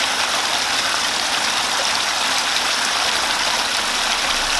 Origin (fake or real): real